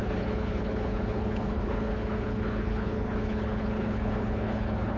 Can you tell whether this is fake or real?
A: fake